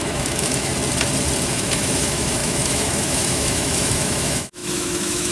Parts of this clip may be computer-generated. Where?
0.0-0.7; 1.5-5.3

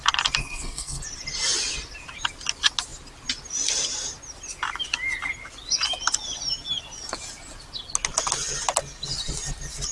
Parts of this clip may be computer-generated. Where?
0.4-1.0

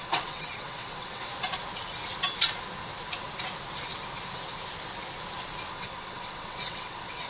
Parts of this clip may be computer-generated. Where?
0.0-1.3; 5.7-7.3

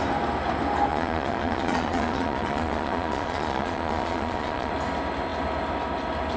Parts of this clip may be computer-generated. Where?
0.9-4.7

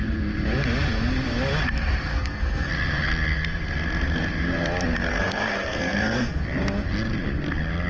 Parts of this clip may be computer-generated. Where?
2.1-2.7; 5.1-6.4